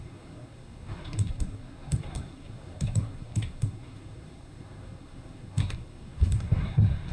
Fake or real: fake